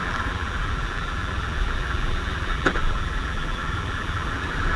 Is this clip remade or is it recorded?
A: remade